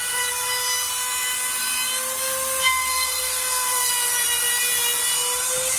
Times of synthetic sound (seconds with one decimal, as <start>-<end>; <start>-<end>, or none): 2.6-3.9